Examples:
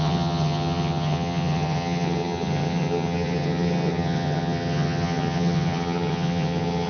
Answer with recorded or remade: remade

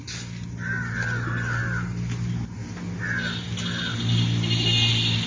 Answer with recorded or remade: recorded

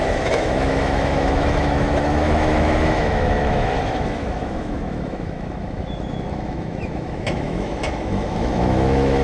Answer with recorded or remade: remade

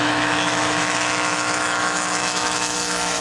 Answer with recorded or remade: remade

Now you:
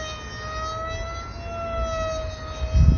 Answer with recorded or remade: recorded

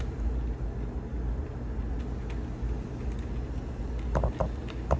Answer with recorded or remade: recorded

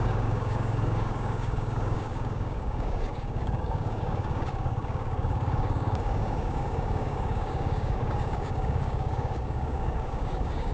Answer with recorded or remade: remade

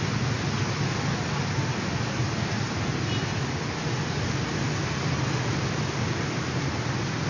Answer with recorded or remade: recorded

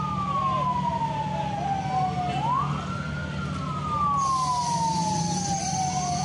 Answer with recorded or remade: recorded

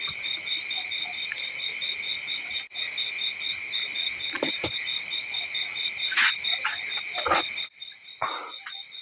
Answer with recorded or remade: recorded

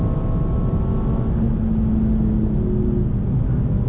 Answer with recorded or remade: recorded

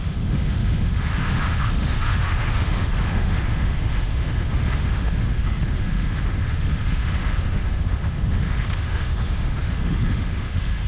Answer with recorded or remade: remade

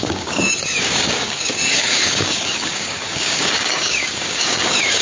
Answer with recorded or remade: remade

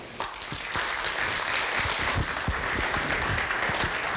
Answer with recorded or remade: recorded